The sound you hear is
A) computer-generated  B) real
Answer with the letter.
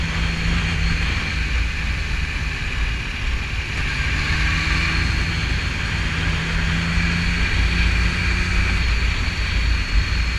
B